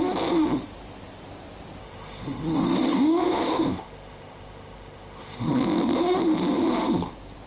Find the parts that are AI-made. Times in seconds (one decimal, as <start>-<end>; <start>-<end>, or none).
1.8-5.5